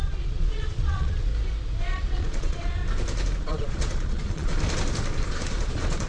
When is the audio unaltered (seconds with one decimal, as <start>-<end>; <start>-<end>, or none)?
1.3-1.8; 2.8-3.4; 4.5-5.3